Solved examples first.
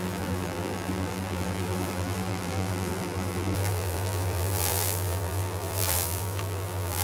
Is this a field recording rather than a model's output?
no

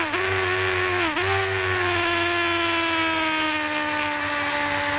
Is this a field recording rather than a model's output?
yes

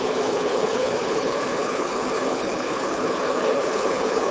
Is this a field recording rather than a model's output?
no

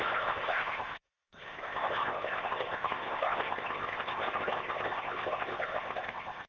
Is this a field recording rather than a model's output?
no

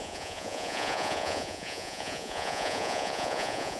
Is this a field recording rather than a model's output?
no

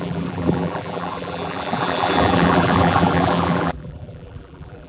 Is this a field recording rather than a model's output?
no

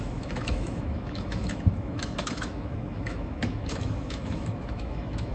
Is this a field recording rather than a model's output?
no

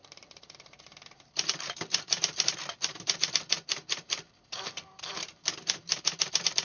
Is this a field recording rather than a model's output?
no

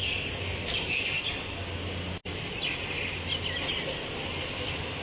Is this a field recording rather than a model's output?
yes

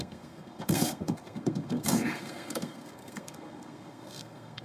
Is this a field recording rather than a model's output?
no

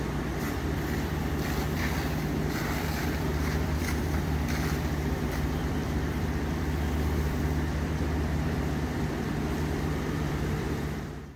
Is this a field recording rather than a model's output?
no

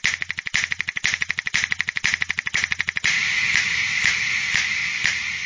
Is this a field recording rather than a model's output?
yes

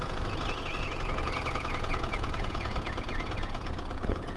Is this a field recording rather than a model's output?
no